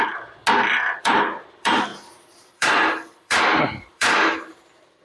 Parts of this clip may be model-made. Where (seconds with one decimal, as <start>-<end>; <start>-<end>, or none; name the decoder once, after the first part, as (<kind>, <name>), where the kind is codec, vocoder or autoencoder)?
0.0-0.4 (vocoder, BigVGAN v2); 1.0-5.0